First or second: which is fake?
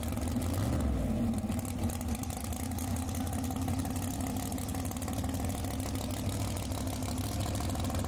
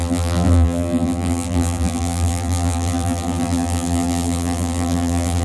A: second